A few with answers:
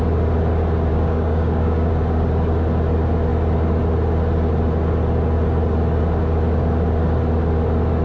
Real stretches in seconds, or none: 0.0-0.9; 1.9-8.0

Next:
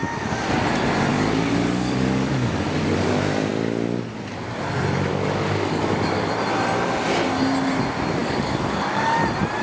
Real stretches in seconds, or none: 0.0-1.1; 3.1-5.1; 6.3-8.2; 9.2-9.6

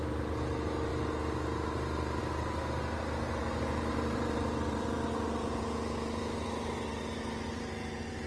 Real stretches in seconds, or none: 0.0-3.4; 5.6-8.3

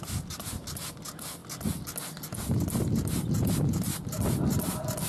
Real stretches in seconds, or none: 1.4-3.5

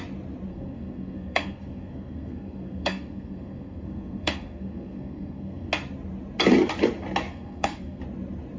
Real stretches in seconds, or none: 0.0-0.5; 5.7-7.3; 8.0-8.6

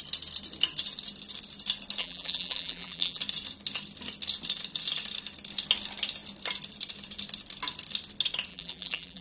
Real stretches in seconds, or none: 0.0-2.0; 3.2-8.5

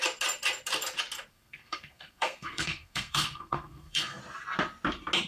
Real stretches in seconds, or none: 0.0-1.3; 4.2-5.3

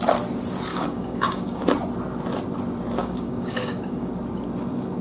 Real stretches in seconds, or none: 0.0-0.7; 1.6-3.0; 4.1-5.0